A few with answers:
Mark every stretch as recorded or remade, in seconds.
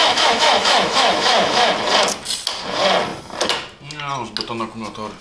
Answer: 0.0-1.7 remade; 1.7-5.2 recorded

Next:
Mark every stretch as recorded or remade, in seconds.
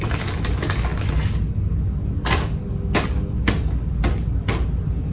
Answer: 0.0-5.1 recorded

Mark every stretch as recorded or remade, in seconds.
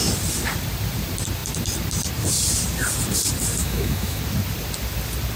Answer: 0.0-3.6 recorded; 3.6-4.2 remade; 4.2-5.4 recorded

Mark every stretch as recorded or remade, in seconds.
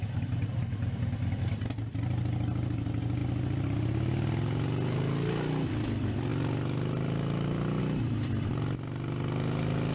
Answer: 0.0-9.9 recorded